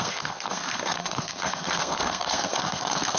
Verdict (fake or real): fake